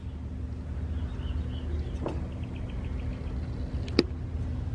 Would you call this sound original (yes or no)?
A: yes